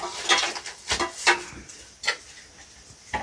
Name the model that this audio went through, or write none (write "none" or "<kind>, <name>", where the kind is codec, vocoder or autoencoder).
none